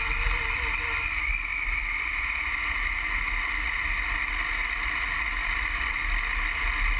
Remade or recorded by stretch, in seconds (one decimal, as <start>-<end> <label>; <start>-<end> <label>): 0.0-7.0 recorded